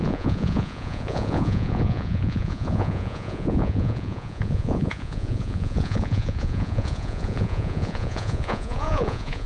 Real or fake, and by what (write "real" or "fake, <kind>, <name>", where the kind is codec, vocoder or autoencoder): fake, vocoder, Vocos